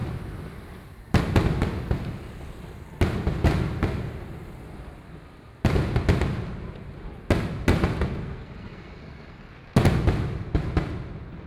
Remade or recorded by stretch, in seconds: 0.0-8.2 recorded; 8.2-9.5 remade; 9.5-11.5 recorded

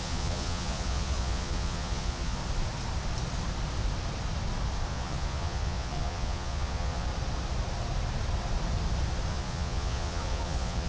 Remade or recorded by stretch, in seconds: 0.0-2.4 remade; 2.4-4.9 recorded; 4.9-7.1 remade; 7.1-9.3 recorded; 9.3-10.9 remade

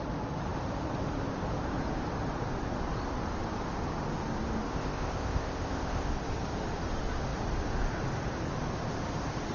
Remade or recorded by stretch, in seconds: 0.0-4.7 recorded; 4.7-6.1 remade; 6.1-9.5 recorded

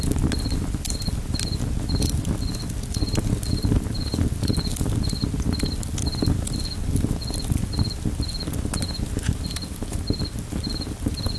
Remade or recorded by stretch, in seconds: 0.0-11.4 recorded

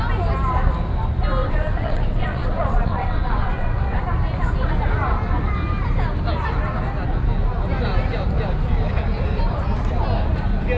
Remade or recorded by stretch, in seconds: 0.0-1.4 recorded; 1.4-4.0 remade; 4.0-10.8 recorded

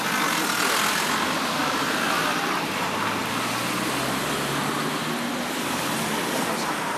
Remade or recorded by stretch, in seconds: 0.0-1.6 recorded; 1.6-2.2 remade; 2.2-7.0 recorded